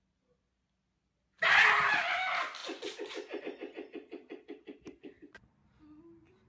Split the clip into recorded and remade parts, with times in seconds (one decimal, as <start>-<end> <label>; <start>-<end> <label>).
0.0-6.5 recorded